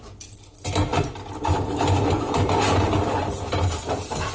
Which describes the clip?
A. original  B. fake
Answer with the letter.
A